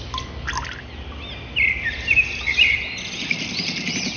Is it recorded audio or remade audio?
recorded